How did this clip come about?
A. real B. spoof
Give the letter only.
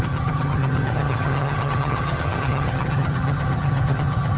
B